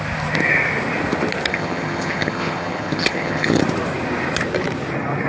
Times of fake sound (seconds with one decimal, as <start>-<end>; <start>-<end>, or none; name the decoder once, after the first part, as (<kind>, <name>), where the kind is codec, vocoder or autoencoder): 1.5-3.6 (vocoder, HiFi-GAN)